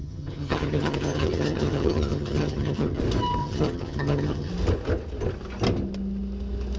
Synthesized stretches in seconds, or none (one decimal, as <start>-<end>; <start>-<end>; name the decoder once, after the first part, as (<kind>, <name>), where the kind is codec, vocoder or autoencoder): 0.0-3.0 (vocoder, HiFi-GAN); 3.4-4.5